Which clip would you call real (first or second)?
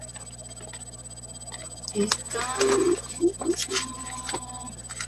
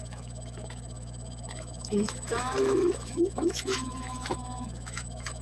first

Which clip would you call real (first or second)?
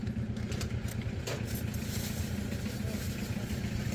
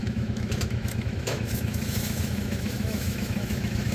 first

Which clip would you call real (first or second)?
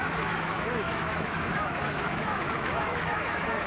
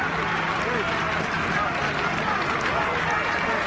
second